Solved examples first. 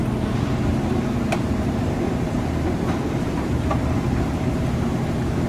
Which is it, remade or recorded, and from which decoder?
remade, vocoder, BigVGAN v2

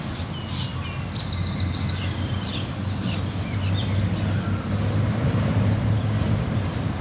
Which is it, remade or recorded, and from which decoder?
recorded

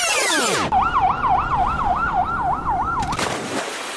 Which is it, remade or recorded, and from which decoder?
remade, vocoder, BigVGAN v2